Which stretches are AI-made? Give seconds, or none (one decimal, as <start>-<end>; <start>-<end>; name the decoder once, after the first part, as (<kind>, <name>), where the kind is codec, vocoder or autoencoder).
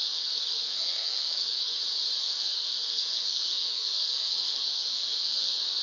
0.0-1.7 (codec, SNAC); 2.2-5.8